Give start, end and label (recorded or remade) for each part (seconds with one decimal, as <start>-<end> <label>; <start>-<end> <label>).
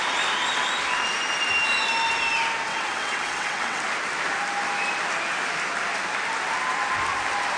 0.0-2.7 recorded; 2.7-3.8 remade; 3.8-7.6 recorded